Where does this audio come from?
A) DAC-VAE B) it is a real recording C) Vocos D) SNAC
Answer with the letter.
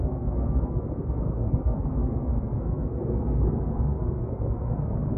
D